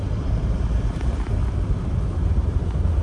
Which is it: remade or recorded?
recorded